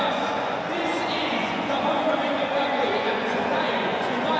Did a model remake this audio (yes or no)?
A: yes